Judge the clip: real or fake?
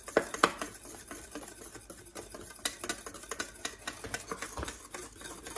real